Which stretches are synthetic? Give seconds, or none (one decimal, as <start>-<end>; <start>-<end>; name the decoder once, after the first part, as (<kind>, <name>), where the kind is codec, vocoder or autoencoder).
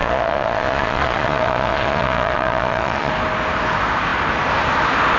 0.0-3.1 (vocoder, Vocos)